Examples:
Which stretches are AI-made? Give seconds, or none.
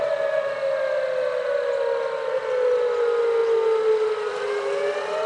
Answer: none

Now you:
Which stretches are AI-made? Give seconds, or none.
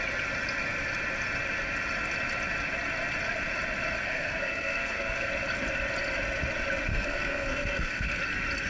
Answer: 4.0-5.3; 6.9-8.2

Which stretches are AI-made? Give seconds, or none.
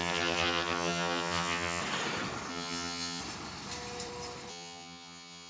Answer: 0.0-1.8; 2.5-3.2; 4.5-5.5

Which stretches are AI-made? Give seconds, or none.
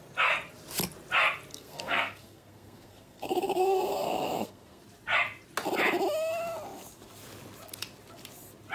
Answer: 1.5-4.8